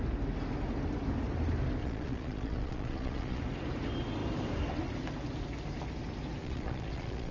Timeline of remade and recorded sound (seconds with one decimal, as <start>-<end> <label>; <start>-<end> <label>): 0.0-1.8 recorded; 1.8-3.4 remade; 3.4-6.4 recorded; 6.4-7.3 remade